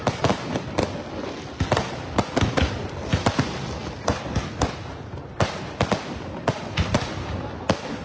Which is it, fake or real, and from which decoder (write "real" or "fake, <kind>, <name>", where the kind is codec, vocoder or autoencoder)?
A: real